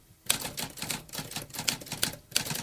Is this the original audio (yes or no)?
yes